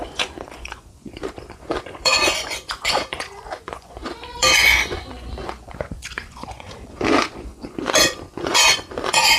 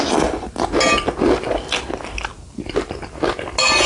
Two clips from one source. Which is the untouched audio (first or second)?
second